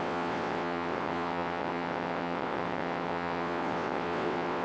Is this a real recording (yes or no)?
no